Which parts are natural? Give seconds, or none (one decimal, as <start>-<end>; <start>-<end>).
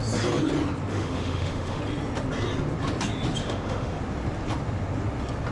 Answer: 0.0-0.9; 1.8-3.4; 4.0-5.5